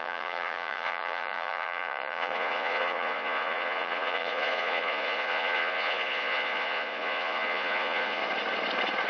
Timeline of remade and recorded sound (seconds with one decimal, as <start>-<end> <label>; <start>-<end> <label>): 0.0-8.2 remade; 8.2-9.1 recorded